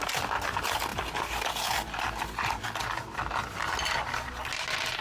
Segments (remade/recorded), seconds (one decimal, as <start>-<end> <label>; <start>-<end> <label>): 0.0-5.0 recorded